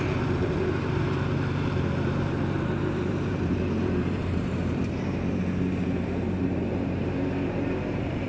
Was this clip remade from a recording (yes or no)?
yes